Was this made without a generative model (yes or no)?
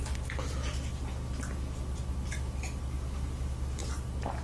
yes